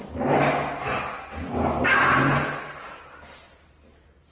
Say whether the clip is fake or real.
real